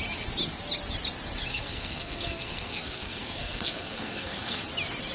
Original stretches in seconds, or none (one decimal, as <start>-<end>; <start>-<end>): 0.0-1.5; 4.6-5.1